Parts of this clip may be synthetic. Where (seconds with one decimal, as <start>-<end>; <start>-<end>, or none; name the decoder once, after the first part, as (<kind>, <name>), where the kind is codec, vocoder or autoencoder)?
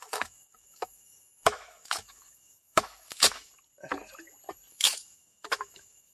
0.0-3.5 (autoencoder, DAC-VAE); 4.7-6.1